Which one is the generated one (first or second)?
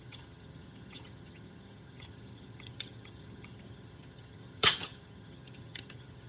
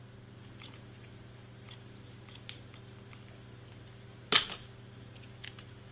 first